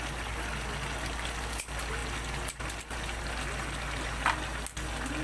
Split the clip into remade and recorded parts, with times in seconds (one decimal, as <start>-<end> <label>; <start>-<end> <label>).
0.0-5.2 recorded